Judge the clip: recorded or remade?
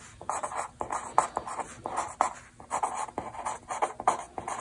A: recorded